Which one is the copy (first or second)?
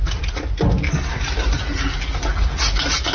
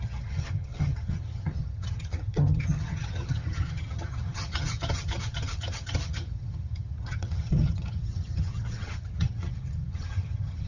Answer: second